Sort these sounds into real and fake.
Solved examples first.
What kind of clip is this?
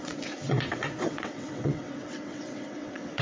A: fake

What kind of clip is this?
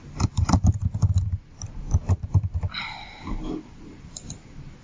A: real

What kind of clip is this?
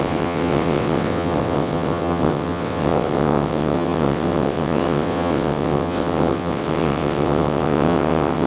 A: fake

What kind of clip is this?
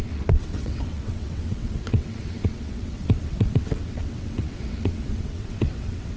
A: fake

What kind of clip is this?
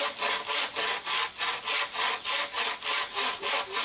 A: real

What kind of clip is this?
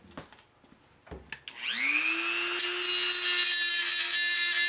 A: real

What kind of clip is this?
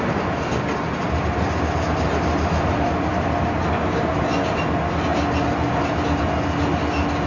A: real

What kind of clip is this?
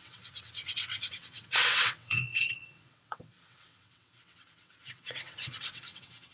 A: fake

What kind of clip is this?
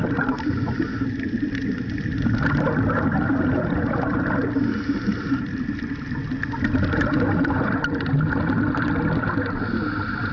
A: real